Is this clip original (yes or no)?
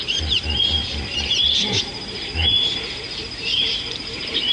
no